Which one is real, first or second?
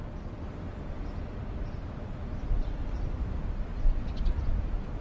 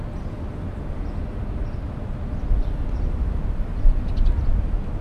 second